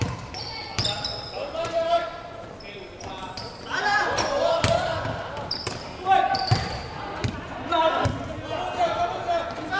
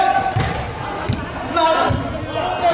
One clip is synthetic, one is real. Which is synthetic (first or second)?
first